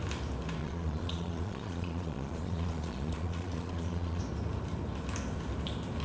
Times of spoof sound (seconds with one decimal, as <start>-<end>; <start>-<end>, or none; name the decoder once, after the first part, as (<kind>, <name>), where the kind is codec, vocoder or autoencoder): 0.6-4.2 (vocoder, Vocos)